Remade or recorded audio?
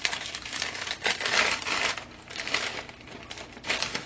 recorded